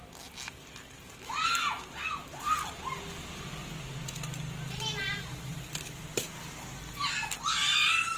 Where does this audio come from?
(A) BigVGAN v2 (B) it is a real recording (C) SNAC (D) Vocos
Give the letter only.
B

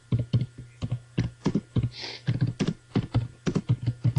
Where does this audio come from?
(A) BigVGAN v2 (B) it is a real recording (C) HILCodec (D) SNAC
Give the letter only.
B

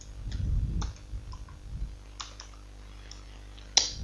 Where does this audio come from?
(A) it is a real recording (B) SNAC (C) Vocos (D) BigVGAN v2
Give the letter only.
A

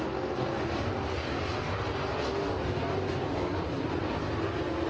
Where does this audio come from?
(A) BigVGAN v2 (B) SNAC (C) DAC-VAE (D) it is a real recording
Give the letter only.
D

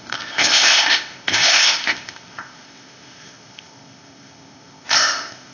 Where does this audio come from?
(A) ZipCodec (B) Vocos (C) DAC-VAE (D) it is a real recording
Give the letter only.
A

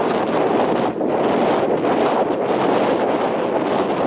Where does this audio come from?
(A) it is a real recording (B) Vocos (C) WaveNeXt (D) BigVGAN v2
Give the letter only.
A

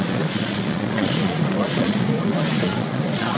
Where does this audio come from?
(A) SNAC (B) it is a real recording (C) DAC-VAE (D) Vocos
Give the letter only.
D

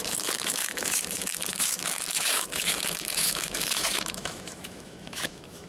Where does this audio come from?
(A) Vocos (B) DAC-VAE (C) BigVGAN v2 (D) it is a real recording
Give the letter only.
B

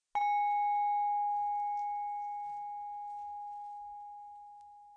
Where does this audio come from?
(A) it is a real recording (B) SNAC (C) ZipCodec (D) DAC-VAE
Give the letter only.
A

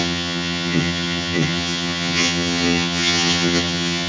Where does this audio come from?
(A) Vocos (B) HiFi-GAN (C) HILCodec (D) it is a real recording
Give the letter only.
B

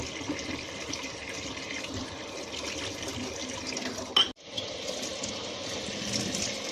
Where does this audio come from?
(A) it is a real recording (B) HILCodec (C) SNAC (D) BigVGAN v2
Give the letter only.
A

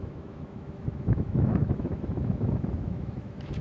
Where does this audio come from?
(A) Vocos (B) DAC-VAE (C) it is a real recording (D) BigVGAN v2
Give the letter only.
B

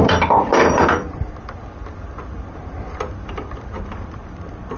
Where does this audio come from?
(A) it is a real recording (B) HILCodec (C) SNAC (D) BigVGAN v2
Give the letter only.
D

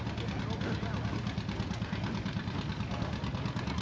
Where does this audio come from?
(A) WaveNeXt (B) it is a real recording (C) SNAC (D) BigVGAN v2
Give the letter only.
B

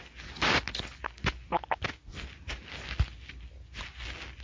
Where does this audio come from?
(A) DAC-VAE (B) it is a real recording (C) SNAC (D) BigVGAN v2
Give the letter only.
B